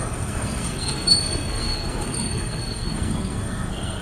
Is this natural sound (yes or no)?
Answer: no